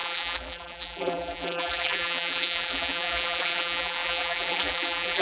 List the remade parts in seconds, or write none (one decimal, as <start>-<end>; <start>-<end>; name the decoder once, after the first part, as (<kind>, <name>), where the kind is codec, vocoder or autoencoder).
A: 0.0-5.2 (vocoder, BigVGAN v2)